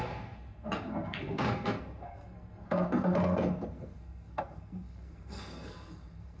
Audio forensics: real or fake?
fake